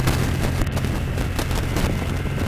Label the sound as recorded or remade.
recorded